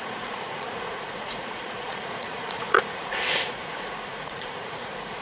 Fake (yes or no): yes